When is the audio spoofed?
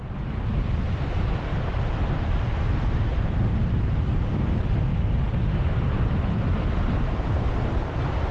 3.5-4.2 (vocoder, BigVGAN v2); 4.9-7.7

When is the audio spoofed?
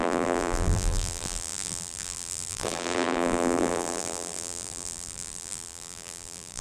0.0-6.6 (vocoder, BigVGAN v2)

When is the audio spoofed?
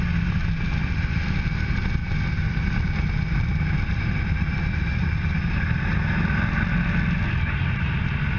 0.8-1.3 (vocoder, BigVGAN v2); 2.0-2.7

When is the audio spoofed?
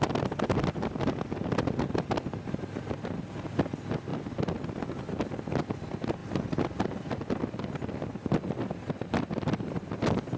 none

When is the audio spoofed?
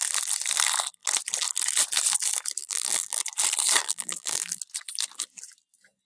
2.6-3.2 (vocoder, BigVGAN v2); 3.8-4.6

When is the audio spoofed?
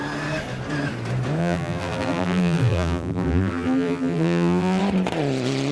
1.4-4.8 (vocoder, BigVGAN v2)